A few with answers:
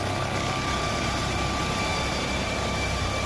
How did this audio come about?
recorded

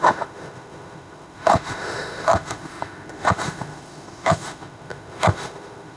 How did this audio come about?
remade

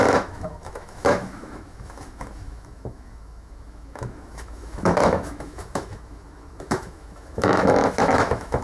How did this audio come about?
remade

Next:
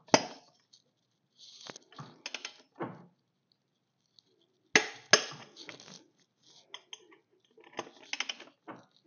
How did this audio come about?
recorded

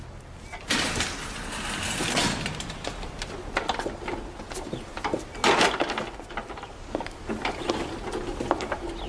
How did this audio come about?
recorded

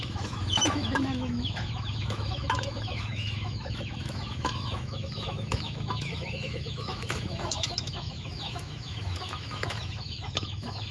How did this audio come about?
remade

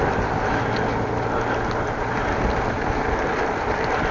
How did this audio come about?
recorded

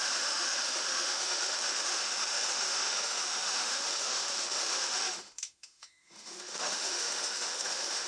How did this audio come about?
remade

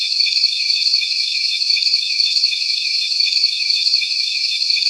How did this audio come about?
remade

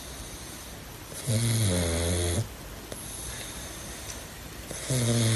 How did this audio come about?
recorded